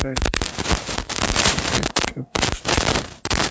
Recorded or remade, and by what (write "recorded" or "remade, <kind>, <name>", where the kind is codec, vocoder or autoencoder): remade, vocoder, BigVGAN v2